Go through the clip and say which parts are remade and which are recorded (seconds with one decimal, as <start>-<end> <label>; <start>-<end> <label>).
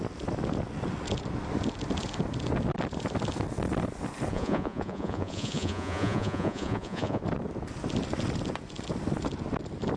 0.0-4.3 recorded; 4.3-7.2 remade; 7.2-10.0 recorded